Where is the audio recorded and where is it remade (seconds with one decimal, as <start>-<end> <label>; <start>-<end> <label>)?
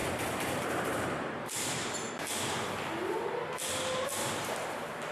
0.0-2.1 remade; 2.1-5.1 recorded